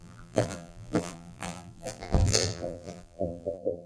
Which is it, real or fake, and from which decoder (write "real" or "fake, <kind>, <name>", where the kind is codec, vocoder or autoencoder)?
fake, vocoder, BigVGAN v2